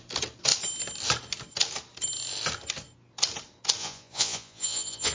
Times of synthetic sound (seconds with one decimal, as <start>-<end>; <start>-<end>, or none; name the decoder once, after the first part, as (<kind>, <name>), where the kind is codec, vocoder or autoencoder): 3.8-5.1 (vocoder, Vocos)